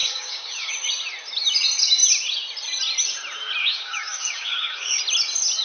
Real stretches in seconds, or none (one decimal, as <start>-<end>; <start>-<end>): 0.7-3.6; 5.0-5.6